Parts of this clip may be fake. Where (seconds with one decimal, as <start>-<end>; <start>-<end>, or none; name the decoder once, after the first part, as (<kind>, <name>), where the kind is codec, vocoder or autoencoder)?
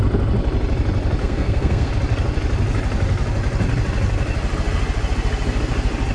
1.2-1.9 (codec, SNAC)